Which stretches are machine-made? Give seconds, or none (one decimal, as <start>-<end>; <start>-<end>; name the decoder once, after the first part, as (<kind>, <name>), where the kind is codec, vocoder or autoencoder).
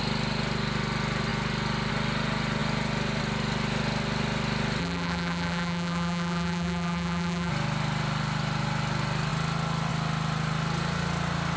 4.8-7.5 (vocoder, BigVGAN v2)